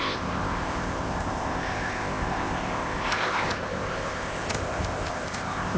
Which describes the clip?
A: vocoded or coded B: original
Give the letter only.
A